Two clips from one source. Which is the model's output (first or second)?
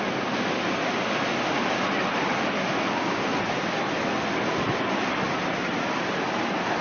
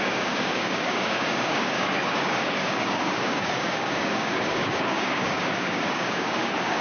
second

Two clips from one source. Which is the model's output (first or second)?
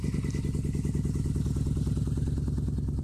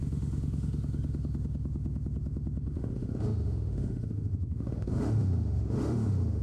second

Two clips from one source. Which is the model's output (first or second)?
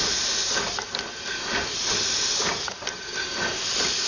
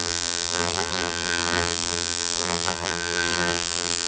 second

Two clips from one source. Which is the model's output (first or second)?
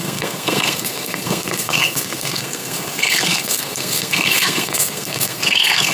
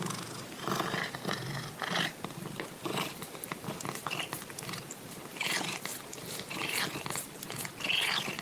first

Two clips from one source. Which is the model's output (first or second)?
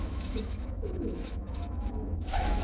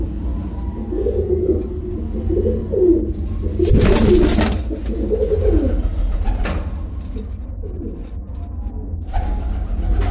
first